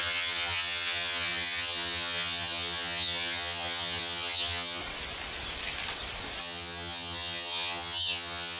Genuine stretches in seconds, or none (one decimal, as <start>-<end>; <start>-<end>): 4.8-6.4